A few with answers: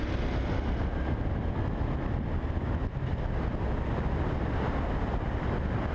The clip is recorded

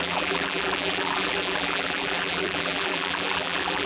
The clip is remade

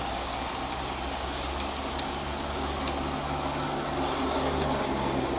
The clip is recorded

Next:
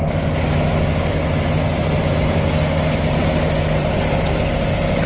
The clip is recorded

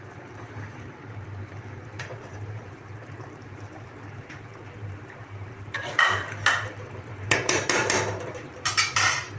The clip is remade